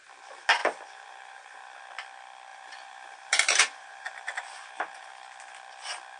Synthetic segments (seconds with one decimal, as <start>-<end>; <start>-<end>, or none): 0.6-1.8; 2.5-5.1